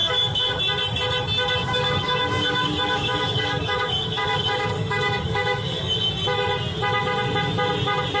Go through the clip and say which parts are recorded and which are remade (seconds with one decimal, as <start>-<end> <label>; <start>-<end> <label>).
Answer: 0.0-0.6 remade; 0.6-1.6 recorded; 1.6-6.1 remade; 6.1-8.2 recorded